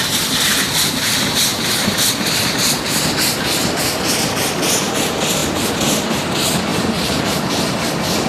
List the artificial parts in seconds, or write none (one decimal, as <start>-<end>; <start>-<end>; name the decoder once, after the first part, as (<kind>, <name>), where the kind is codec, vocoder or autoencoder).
1.5-3.0 (vocoder, BigVGAN v2); 6.7-7.6